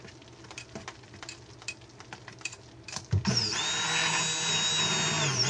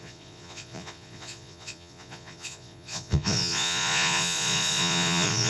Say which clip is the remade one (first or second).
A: second